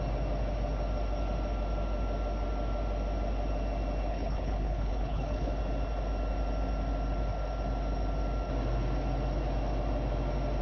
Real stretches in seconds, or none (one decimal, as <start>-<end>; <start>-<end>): 0.0-4.1; 5.5-10.6